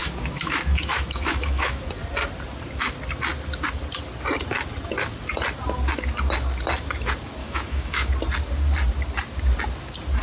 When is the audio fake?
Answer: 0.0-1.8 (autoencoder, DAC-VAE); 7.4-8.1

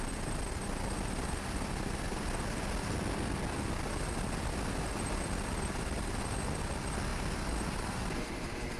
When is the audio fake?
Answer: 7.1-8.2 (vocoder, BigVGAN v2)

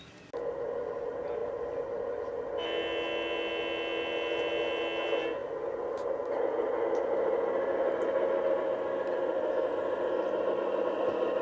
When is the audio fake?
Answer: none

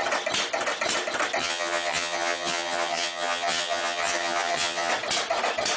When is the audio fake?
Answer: 1.4-4.9 (vocoder, HiFi-GAN)

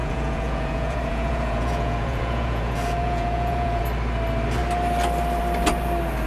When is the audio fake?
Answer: 0.0-3.8 (vocoder, Vocos)

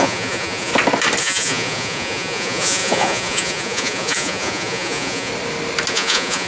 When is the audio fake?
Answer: 0.0-0.7 (vocoder, Vocos); 1.2-5.3; 5.9-6.5

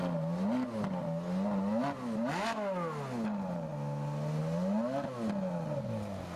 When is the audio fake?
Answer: none